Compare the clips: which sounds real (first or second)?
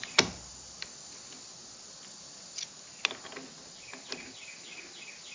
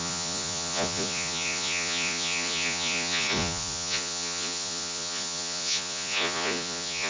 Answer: first